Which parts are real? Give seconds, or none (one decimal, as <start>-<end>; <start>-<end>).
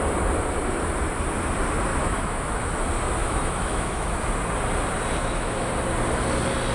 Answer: 0.0-1.9; 2.7-3.2; 4.2-5.2; 5.7-6.7